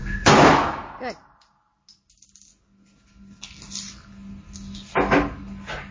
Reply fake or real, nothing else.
real